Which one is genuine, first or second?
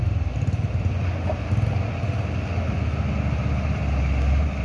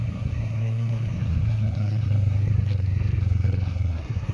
first